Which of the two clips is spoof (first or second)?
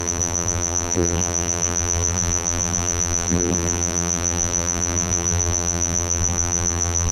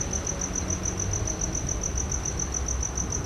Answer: first